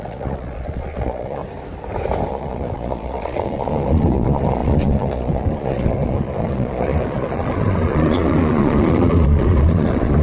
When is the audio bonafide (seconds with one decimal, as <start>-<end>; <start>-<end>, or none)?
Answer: 1.4-2.3